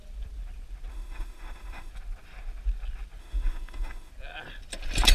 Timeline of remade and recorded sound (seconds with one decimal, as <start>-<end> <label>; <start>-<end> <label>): 0.0-0.9 recorded; 0.9-1.9 remade; 1.9-3.2 recorded; 3.2-4.1 remade; 4.1-5.1 recorded